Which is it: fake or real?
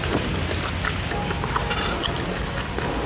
real